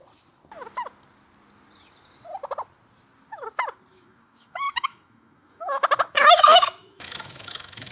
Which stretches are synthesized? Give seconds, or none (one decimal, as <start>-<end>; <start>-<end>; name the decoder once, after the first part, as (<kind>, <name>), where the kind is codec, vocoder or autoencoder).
3.9-7.9 (autoencoder, DAC-VAE)